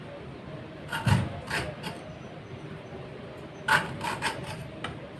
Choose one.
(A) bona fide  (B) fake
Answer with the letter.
A